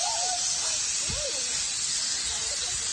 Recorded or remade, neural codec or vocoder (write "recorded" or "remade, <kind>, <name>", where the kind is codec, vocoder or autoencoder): recorded